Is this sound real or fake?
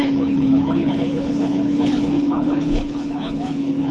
fake